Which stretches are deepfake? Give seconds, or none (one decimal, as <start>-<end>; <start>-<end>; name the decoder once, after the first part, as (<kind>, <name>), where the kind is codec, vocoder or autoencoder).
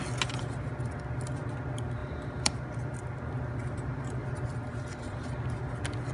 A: 2.0-3.0 (vocoder, BigVGAN v2); 3.6-4.3